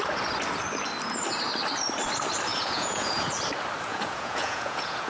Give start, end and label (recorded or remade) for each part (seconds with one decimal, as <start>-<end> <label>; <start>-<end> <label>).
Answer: 0.0-2.5 recorded; 2.5-3.3 remade; 3.3-3.9 recorded; 3.9-5.1 remade